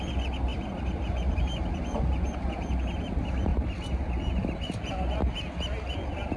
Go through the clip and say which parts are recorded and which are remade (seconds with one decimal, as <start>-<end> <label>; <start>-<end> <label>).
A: 0.0-6.4 recorded